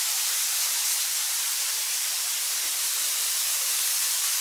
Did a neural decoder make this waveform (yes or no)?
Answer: yes